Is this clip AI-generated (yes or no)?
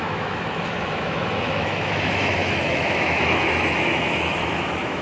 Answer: yes